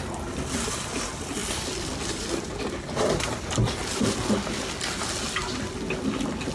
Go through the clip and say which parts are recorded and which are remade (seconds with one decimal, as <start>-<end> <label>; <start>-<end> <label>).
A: 0.0-1.4 recorded; 1.4-3.0 remade; 3.0-5.4 recorded; 5.4-6.0 remade; 6.0-6.5 recorded